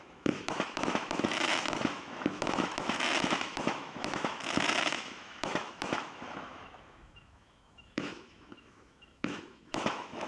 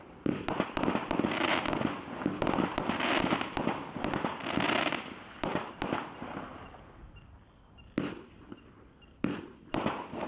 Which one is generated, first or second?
first